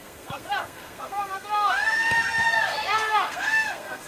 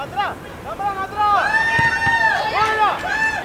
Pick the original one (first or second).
second